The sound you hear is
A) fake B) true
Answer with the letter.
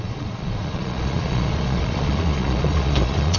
A